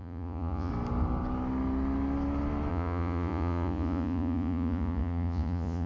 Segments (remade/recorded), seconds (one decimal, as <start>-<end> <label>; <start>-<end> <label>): 0.0-0.7 remade; 0.7-2.7 recorded; 2.7-5.9 remade